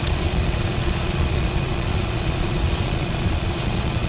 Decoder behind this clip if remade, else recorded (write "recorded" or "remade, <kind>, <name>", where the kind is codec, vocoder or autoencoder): remade, vocoder, Vocos